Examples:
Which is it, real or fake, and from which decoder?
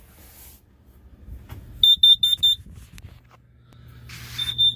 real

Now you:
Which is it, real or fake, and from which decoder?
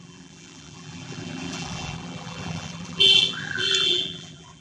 fake, vocoder, BigVGAN v2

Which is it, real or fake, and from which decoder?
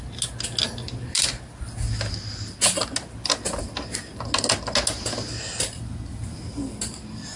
real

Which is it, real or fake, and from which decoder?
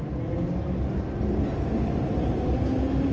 real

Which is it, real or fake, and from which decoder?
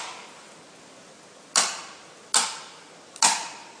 real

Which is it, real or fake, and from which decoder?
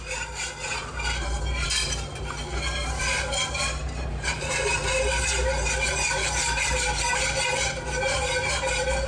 fake, vocoder, BigVGAN v2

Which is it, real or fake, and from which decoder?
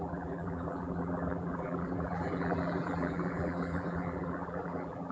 fake, vocoder, BigVGAN v2